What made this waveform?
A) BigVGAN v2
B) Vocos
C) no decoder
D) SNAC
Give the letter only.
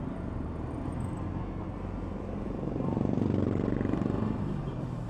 A